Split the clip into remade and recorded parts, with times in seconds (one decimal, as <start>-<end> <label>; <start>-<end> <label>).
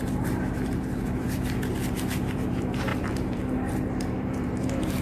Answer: 0.0-5.0 remade